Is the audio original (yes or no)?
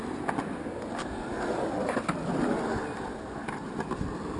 yes